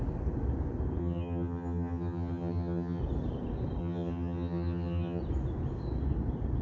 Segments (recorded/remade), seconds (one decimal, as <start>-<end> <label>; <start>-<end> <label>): 0.0-1.0 recorded; 1.0-3.0 remade; 3.0-3.8 recorded; 3.8-5.2 remade; 5.2-6.6 recorded